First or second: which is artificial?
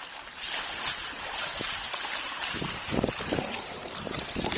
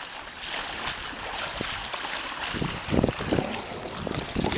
first